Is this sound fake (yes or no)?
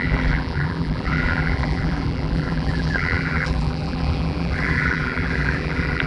yes